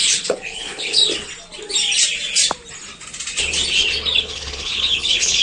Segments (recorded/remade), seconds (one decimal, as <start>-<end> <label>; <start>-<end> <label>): 0.0-1.0 remade; 1.0-4.2 recorded; 4.2-5.4 remade

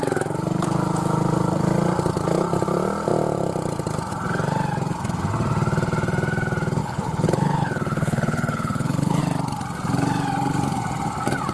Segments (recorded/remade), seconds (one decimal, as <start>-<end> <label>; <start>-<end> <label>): 0.0-6.8 recorded; 6.8-9.2 remade; 9.2-11.5 recorded